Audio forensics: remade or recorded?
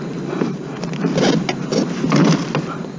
recorded